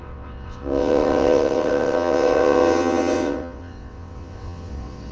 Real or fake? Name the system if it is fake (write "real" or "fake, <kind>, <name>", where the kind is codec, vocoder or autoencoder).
fake, vocoder, WaveNeXt